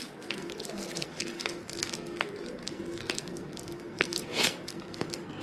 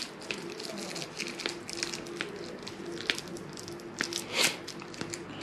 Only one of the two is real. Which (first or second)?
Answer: second